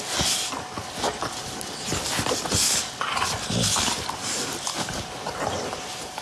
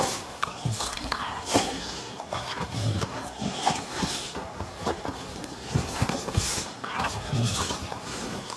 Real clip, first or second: first